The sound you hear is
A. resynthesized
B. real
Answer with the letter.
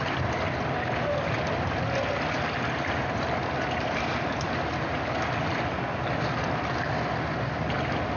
B